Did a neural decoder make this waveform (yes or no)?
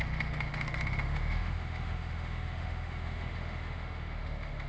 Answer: yes